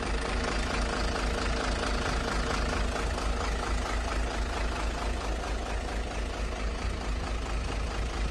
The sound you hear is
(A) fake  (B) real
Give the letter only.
B